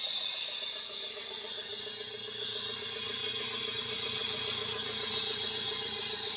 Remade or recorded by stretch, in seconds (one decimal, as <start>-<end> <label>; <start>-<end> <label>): 0.0-1.7 remade; 1.7-2.8 recorded; 2.8-3.2 remade; 3.2-3.8 recorded; 3.8-6.4 remade

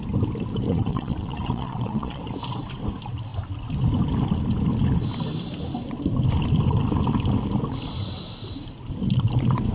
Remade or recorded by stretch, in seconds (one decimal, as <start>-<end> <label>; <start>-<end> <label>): 0.0-0.7 recorded; 0.7-2.2 remade; 2.2-9.7 recorded